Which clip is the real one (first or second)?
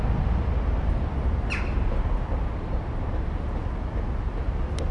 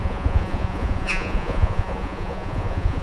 first